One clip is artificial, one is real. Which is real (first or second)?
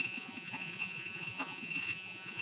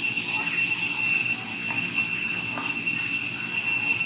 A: second